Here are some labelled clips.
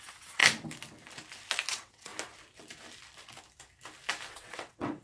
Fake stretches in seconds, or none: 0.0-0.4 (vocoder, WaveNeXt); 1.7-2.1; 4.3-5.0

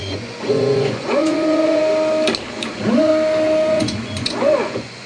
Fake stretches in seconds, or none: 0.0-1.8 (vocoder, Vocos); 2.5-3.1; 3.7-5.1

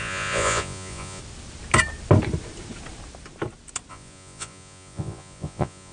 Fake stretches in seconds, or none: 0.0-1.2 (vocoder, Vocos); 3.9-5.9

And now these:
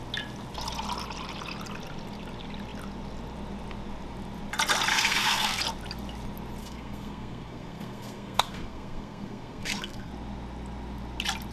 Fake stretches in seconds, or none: 4.9-5.6 (codec, SNAC); 6.6-10.1

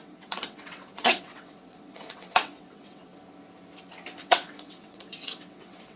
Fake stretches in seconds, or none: 0.0-3.1 (vocoder, WaveNeXt); 4.2-6.0